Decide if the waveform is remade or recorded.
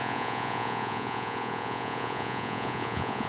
remade